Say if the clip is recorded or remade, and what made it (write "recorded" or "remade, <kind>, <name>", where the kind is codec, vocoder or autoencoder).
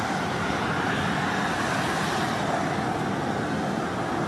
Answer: recorded